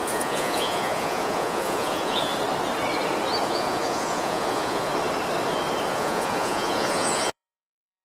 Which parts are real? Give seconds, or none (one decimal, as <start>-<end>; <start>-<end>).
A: 2.3-3.4; 4.9-5.9